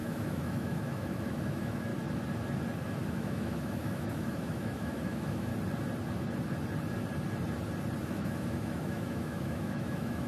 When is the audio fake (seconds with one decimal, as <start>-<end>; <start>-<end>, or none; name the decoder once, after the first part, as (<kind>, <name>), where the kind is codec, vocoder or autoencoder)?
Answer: 0.0-1.9 (autoencoder, DAC-VAE); 3.1-5.5; 8.0-10.3